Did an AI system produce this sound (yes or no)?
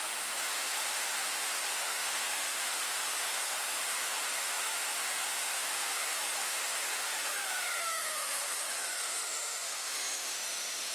yes